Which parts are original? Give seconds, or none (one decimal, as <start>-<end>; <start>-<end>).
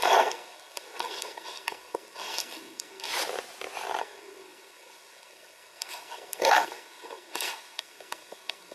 3.1-4.0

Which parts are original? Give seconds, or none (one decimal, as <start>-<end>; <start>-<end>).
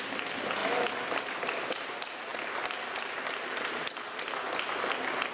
0.0-5.3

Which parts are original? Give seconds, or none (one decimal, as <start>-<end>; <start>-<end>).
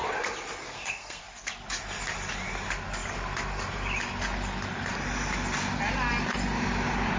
0.0-0.6; 1.2-7.2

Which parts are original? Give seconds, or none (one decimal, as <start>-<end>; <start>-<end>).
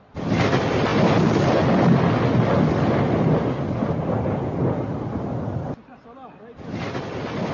0.0-7.5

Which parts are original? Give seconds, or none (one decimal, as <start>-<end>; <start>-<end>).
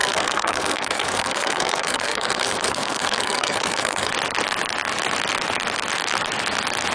4.1-6.9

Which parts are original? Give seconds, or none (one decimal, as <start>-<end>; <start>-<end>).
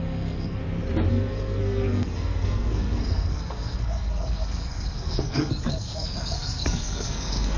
0.6-1.1